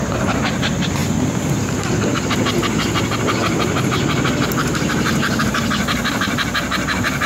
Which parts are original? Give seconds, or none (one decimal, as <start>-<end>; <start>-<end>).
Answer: 0.0-7.3

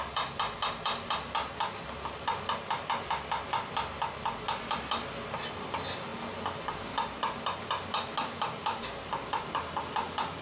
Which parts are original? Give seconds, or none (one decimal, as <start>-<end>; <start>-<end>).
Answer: 0.0-10.4

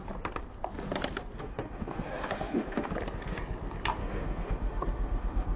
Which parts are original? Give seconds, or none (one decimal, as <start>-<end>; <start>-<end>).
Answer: 0.0-1.4; 2.9-4.0